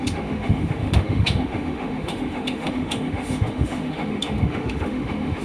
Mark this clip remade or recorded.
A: remade